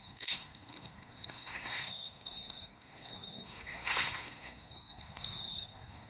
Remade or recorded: remade